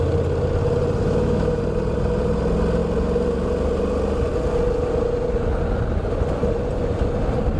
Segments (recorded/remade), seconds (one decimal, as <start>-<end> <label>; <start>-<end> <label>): 0.0-1.0 recorded; 1.0-1.6 remade; 1.6-7.6 recorded